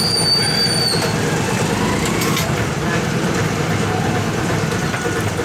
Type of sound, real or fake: real